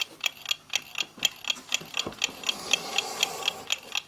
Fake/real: real